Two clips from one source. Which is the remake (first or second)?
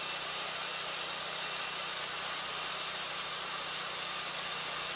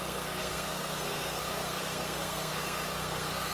second